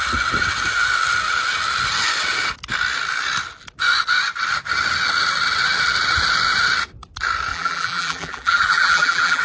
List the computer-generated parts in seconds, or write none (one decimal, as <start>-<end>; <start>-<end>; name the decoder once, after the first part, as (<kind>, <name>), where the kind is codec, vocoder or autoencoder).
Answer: 7.5-9.4 (vocoder, BigVGAN v2)